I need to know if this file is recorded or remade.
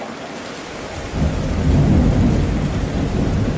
recorded